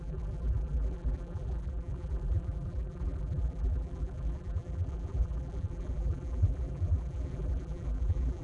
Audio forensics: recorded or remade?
remade